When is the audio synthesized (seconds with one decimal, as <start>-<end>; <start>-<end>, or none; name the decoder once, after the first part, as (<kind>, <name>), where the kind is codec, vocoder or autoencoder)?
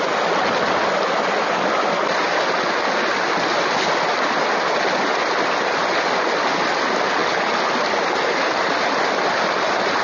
none